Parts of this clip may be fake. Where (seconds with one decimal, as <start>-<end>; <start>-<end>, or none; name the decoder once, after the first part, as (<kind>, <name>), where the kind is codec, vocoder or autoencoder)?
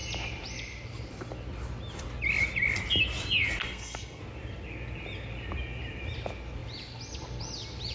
3.6-4.2 (codec, SNAC)